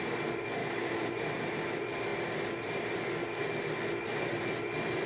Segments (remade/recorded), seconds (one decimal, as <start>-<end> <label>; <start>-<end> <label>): 0.0-0.6 recorded; 0.6-1.1 remade; 1.1-5.1 recorded